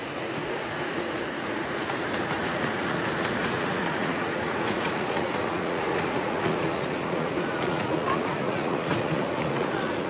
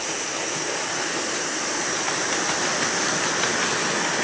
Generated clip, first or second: first